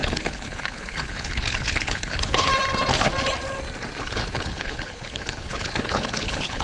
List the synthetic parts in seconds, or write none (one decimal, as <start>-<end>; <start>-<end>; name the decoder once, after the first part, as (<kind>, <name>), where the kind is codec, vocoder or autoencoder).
0.0-2.5 (codec, HILCodec); 4.0-6.6